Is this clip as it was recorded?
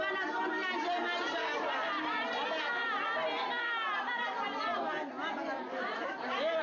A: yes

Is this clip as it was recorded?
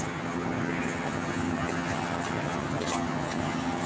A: no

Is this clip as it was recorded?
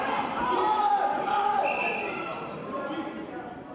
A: no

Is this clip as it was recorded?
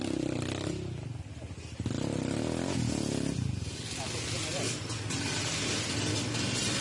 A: yes